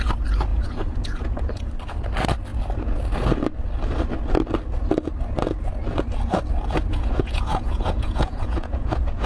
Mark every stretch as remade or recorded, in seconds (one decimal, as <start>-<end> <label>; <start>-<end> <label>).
0.0-0.5 recorded; 0.5-1.7 remade; 1.7-6.9 recorded; 6.9-9.3 remade